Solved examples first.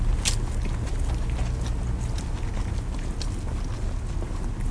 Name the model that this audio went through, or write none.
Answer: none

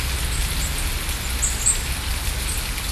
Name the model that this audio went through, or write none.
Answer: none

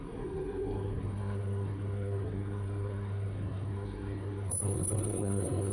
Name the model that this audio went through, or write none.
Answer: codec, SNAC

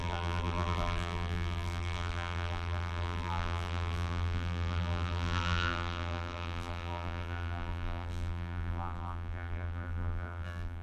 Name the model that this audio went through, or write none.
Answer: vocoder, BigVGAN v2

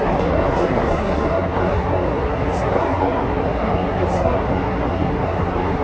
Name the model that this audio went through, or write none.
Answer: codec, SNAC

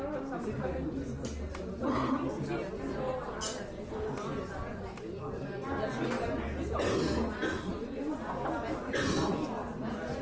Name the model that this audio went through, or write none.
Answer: none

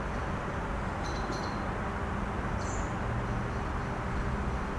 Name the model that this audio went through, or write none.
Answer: none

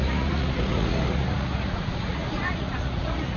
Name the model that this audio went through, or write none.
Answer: vocoder, Vocos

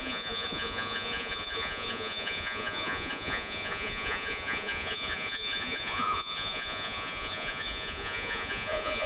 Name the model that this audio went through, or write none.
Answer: vocoder, Vocos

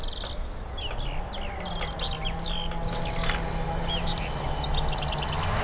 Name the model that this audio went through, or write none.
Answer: none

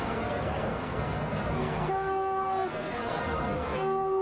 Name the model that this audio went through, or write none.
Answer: codec, SNAC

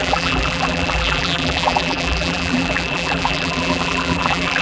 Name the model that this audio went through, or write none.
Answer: vocoder, BigVGAN v2